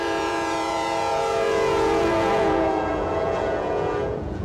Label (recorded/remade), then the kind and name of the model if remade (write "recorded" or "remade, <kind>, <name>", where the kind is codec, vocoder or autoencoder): remade, vocoder, Vocos